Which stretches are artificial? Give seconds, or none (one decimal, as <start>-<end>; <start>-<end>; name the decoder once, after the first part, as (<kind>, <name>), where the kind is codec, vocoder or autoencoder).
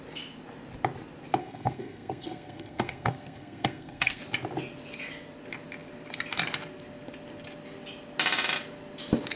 1.4-4.2 (codec, SNAC)